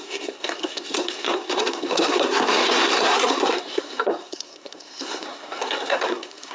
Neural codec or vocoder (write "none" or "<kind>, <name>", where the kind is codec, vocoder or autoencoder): codec, SNAC